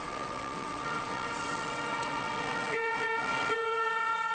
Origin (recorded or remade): remade